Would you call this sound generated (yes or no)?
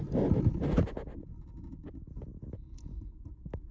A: no